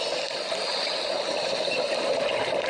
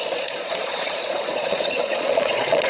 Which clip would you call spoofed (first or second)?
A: second